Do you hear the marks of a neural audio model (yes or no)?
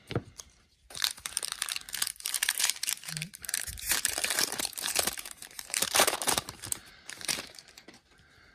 yes